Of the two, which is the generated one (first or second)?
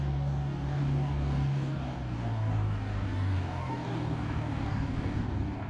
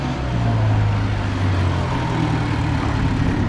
first